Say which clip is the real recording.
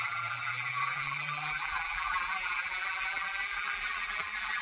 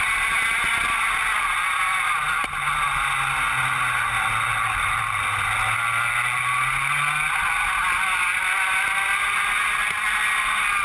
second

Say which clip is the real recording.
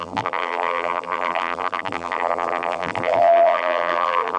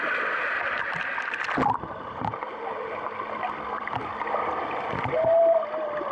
second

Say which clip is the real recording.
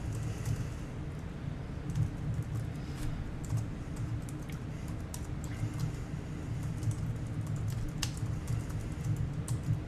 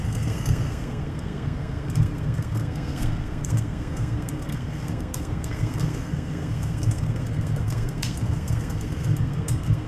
first